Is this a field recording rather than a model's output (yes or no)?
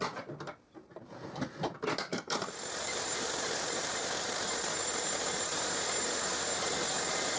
no